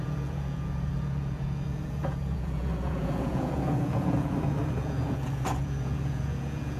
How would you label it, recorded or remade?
remade